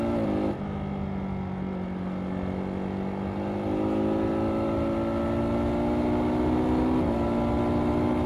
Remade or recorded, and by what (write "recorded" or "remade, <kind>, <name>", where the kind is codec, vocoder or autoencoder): recorded